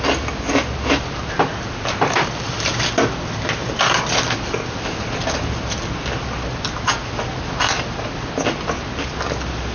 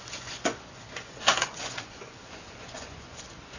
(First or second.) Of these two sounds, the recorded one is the first